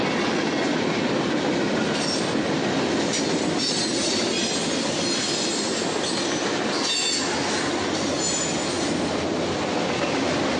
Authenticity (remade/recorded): recorded